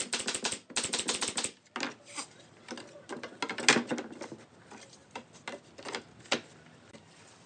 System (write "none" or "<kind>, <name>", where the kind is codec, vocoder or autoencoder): none